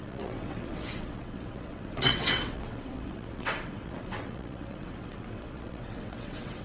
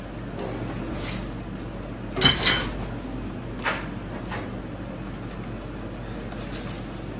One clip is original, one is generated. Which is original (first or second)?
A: second